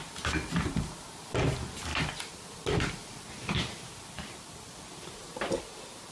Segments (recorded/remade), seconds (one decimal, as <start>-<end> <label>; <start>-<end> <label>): 0.0-6.1 recorded